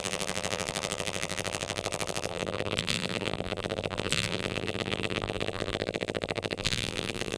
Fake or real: fake